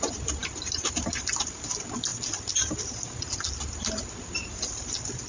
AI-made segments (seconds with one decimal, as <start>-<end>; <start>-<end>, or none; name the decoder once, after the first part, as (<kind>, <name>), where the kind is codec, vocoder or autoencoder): none